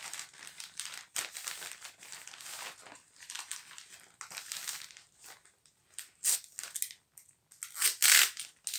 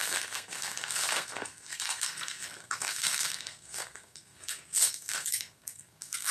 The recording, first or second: first